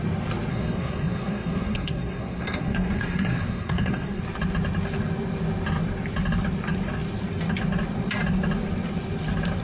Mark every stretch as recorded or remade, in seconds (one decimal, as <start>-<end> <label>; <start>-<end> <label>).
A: 0.0-0.5 recorded; 0.5-4.2 remade; 4.2-9.6 recorded